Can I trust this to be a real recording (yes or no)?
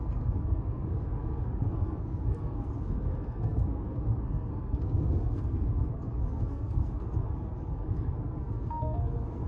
no